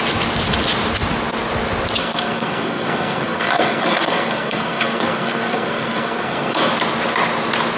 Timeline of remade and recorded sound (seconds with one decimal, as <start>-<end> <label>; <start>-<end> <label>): 0.0-2.0 recorded; 2.0-6.7 remade; 6.7-7.8 recorded